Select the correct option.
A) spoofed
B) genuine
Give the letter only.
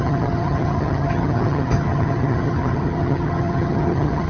A